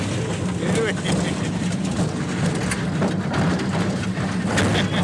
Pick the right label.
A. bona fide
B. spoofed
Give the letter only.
A